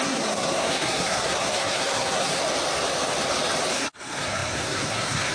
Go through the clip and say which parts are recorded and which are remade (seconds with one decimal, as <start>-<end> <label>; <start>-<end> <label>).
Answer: 0.0-2.4 remade; 2.4-3.7 recorded; 3.7-5.3 remade